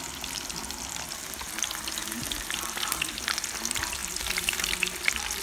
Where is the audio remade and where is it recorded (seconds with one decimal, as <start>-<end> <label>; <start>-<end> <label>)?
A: 0.0-2.0 recorded; 2.0-2.6 remade; 2.6-4.0 recorded; 4.0-4.5 remade; 4.5-5.4 recorded